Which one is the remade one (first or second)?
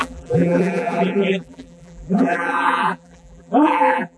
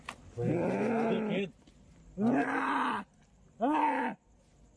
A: first